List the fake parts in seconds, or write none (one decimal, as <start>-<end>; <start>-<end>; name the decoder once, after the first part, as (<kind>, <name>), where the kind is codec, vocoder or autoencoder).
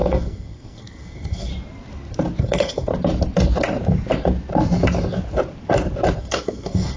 0.0-1.5 (codec, SNAC); 2.4-2.9; 6.2-7.0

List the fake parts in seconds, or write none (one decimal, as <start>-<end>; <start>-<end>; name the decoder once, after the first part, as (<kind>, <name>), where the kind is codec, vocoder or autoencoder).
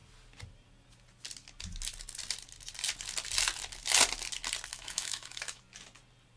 4.7-5.6 (autoencoder, DAC-VAE)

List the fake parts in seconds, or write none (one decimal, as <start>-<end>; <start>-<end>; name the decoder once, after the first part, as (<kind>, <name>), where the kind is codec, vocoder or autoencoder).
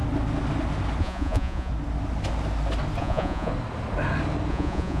1.0-1.7 (vocoder, Vocos); 3.0-3.5; 4.5-5.0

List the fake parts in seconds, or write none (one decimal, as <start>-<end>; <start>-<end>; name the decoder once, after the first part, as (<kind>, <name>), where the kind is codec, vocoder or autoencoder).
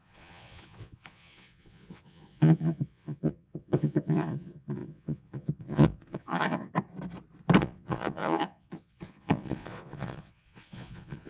0.0-6.7 (vocoder, Vocos); 7.6-11.3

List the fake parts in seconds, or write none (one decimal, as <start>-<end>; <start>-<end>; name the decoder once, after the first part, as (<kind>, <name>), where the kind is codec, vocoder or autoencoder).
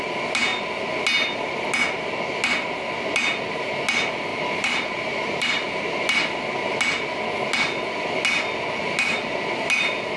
4.3-5.7 (vocoder, BigVGAN v2)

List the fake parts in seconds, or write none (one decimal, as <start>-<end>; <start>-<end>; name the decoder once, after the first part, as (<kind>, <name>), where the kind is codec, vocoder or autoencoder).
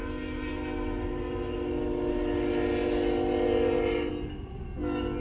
none